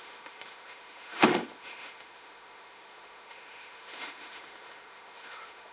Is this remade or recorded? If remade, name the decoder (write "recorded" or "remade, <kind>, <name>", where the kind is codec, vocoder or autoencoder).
remade, autoencoder, DAC-VAE